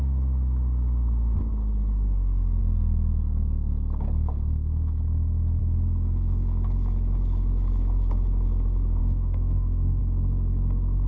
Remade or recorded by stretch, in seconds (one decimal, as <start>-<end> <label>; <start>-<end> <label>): 0.0-9.0 recorded; 9.0-10.0 remade; 10.0-11.1 recorded